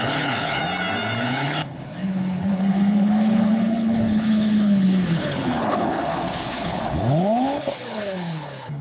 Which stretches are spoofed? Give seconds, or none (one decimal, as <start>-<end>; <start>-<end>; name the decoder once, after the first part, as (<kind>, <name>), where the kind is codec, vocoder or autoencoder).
0.0-0.6 (codec, HILCodec); 1.2-8.8